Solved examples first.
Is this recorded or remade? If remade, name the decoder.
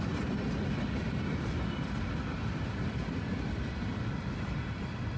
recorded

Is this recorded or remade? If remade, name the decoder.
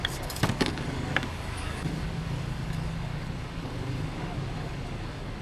remade, codec, DAC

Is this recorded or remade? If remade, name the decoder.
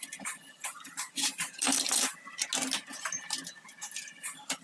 recorded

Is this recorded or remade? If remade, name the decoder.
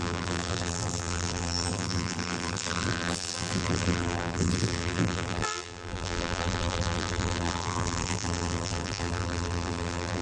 remade, vocoder, BigVGAN v2